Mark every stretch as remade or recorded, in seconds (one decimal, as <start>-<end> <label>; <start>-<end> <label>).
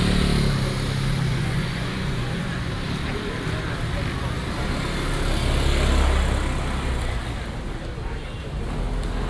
0.0-1.3 recorded; 1.3-2.7 remade; 2.7-9.3 recorded